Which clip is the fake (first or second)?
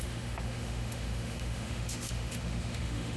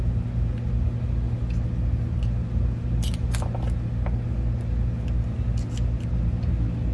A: first